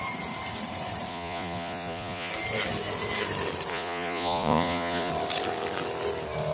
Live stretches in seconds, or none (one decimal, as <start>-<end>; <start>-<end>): 0.0-1.1; 2.3-3.7; 5.1-6.5